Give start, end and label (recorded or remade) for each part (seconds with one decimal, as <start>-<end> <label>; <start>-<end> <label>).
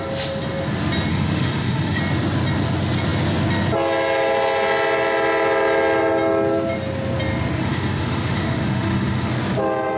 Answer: 0.0-1.1 recorded; 1.1-2.0 remade; 2.0-7.6 recorded; 7.6-9.3 remade; 9.3-10.0 recorded